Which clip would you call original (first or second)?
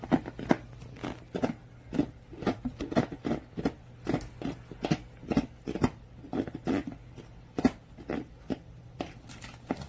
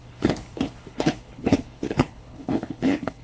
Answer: first